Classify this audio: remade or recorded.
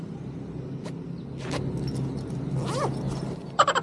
recorded